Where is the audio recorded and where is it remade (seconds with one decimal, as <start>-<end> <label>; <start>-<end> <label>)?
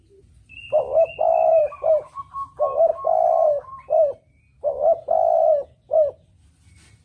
0.0-1.5 recorded; 1.5-2.2 remade; 2.2-2.9 recorded; 2.9-4.4 remade; 4.4-7.0 recorded